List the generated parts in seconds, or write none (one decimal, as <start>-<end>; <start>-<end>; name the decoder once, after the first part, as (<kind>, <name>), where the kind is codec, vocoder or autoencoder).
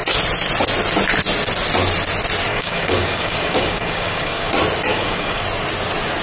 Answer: 2.5-4.5 (codec, DAC); 4.9-5.4